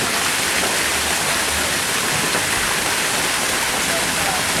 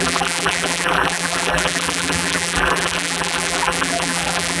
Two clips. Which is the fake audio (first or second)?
second